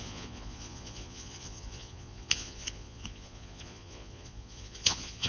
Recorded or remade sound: remade